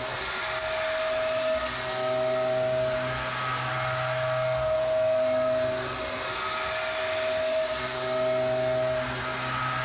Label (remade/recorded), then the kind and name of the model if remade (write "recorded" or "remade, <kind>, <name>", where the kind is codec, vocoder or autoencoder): recorded